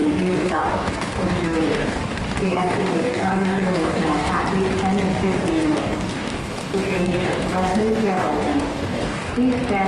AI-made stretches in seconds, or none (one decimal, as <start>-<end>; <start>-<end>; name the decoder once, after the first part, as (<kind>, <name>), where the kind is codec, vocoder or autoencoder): 0.0-4.3 (codec, DAC); 5.1-9.3